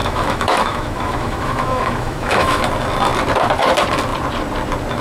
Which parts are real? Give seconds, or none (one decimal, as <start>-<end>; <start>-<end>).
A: 2.6-5.0